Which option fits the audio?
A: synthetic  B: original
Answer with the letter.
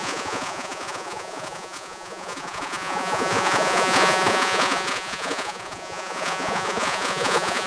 A